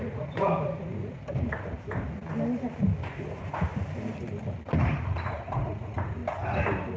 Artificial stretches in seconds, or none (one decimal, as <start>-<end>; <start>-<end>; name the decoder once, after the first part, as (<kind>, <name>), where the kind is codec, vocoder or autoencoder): 0.0-1.2 (vocoder, Vocos); 3.0-3.7; 5.5-6.2